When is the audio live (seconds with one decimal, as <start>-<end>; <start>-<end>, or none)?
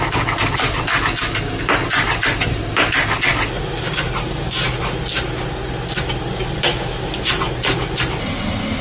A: 0.0-6.7; 7.3-8.8